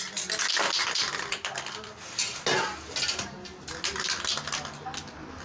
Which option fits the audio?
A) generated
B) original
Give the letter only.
B